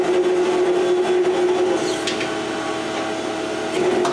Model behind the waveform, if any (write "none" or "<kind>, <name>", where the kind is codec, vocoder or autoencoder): none